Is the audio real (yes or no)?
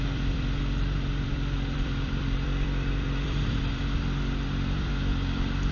no